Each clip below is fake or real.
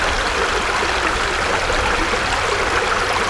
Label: real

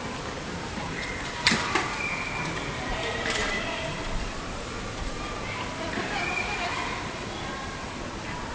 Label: fake